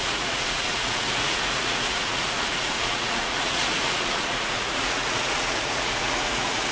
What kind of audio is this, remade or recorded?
remade